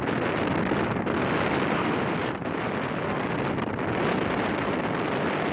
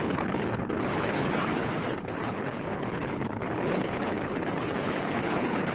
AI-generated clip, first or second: second